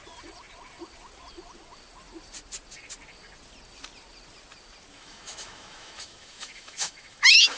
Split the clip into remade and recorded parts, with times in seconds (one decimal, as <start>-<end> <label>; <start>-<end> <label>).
0.0-4.9 recorded; 4.9-7.6 remade